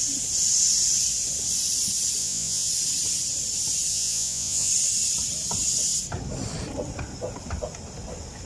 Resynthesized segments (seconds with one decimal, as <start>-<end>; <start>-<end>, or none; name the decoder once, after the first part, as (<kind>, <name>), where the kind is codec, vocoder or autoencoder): 2.2-2.7 (vocoder, Vocos); 3.9-4.7